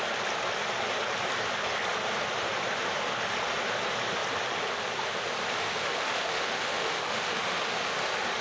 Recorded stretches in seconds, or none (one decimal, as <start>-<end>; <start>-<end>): 0.0-5.5; 8.0-8.4